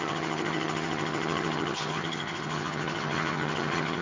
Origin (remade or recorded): remade